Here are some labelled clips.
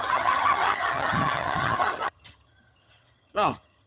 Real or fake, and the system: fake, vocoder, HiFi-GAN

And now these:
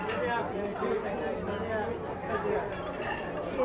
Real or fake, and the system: real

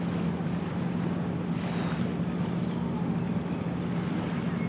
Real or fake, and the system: real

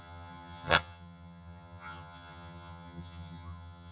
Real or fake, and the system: fake, vocoder, HiFi-GAN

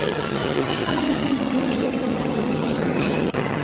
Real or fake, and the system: fake, vocoder, HiFi-GAN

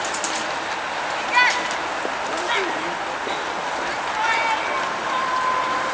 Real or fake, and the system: real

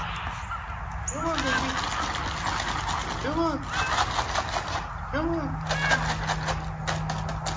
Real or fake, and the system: real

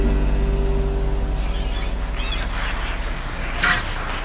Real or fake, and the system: real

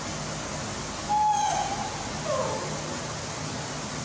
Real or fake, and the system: real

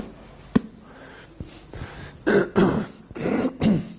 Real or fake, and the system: real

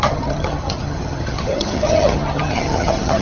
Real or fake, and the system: fake, vocoder, HiFi-GAN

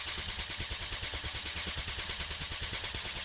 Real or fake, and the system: fake, vocoder, HiFi-GAN